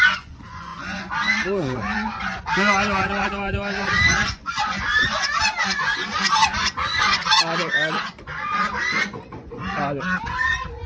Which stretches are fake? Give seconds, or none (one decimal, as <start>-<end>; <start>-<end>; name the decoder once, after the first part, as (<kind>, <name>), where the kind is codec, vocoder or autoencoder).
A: 0.0-10.9 (vocoder, Vocos)